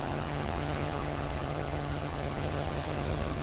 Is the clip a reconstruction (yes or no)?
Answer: yes